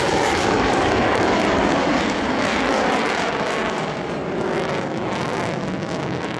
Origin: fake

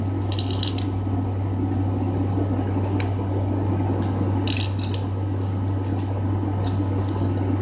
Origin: real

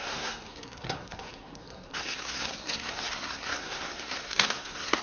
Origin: fake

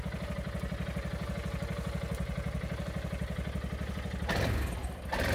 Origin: real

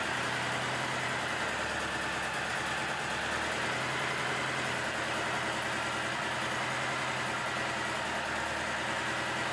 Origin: real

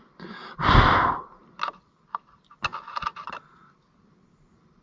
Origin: real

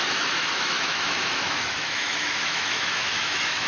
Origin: fake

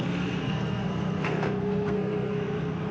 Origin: fake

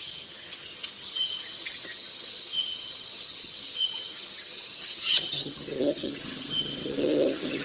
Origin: fake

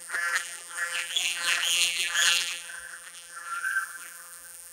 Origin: fake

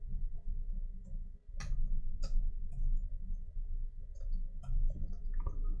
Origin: real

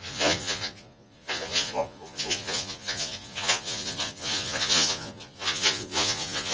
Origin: fake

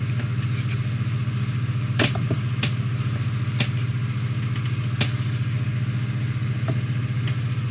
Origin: real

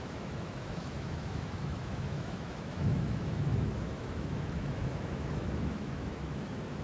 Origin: fake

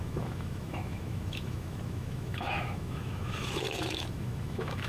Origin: fake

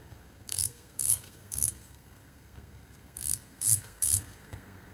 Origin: fake